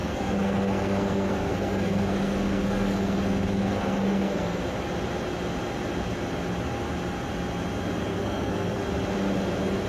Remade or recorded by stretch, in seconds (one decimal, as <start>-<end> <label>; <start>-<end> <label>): 0.0-4.6 remade; 4.6-8.1 recorded; 8.1-8.8 remade; 8.8-9.9 recorded